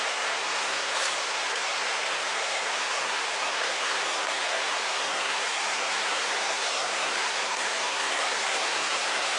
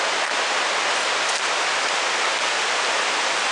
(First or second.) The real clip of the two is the second